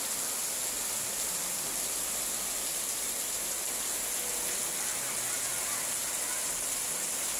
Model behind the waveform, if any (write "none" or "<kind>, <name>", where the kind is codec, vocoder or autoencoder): none